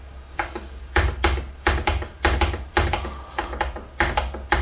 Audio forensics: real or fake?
real